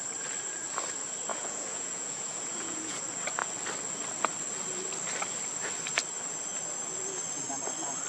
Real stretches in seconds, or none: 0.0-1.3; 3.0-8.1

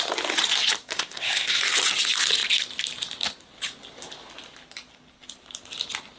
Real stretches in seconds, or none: 0.0-0.9; 1.6-6.2

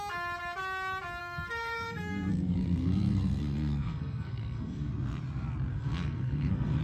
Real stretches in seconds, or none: 0.0-1.2; 4.9-5.7

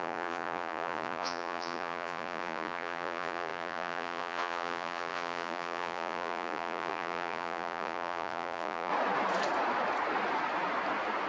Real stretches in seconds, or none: 8.9-11.3

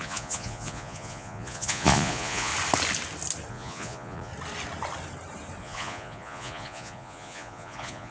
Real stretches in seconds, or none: 2.5-3.5; 4.3-5.6

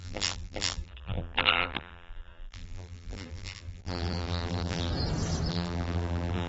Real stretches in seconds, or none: 4.9-5.5